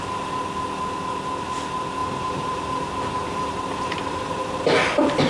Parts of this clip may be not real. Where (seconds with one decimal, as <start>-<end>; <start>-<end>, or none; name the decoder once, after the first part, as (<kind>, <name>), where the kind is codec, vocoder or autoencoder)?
2.0-4.7 (vocoder, BigVGAN v2)